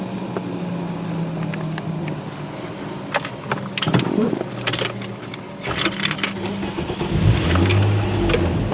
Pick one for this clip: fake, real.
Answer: real